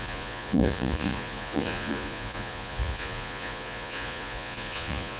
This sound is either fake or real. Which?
fake